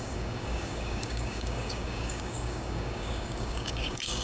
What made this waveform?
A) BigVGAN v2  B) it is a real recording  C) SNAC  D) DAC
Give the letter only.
D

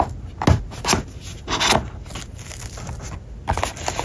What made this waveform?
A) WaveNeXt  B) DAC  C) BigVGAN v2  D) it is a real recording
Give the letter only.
D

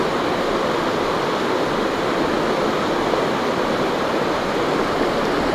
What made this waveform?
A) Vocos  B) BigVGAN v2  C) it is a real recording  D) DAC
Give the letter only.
C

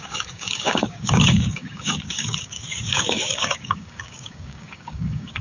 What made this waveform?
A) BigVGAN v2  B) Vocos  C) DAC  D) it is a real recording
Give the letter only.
C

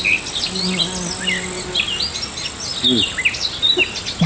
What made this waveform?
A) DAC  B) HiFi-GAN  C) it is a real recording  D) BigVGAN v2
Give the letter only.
C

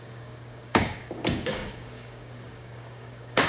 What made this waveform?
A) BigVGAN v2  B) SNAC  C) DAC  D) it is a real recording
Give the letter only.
C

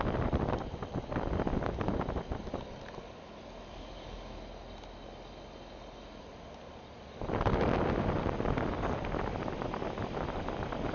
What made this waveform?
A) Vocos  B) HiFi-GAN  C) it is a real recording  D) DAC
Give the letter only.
C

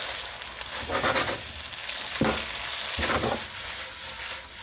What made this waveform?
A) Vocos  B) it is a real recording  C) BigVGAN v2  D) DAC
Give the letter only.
B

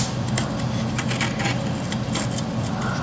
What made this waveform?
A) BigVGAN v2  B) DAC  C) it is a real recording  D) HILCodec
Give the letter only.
C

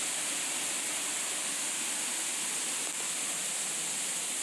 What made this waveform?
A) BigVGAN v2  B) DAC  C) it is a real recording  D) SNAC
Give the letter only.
C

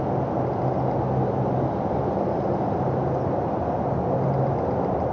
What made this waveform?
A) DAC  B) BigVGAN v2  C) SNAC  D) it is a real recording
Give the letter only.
D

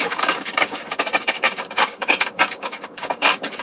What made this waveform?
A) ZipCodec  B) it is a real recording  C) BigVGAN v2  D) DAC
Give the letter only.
D